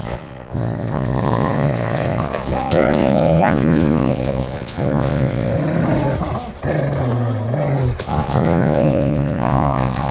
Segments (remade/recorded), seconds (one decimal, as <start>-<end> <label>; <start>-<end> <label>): 0.0-5.5 remade; 5.5-8.0 recorded; 8.0-10.1 remade